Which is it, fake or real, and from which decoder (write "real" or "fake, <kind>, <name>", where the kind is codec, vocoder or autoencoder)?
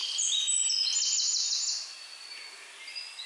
real